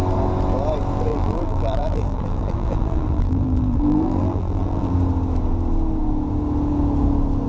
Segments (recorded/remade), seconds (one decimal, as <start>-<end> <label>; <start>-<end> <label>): 0.0-1.1 recorded; 1.1-4.9 remade; 4.9-7.5 recorded